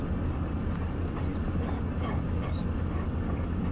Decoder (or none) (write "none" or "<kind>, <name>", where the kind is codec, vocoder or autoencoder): none